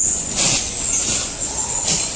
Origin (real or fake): fake